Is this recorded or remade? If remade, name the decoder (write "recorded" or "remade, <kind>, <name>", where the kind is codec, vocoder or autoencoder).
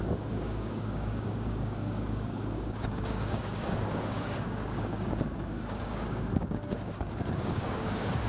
remade, codec, DAC